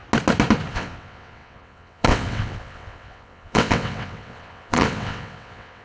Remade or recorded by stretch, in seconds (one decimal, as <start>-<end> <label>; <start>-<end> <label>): 0.0-0.7 recorded; 0.7-5.8 remade